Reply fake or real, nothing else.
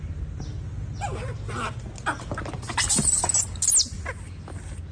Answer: real